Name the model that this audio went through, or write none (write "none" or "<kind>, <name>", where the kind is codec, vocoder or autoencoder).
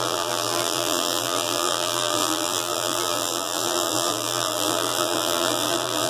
vocoder, BigVGAN v2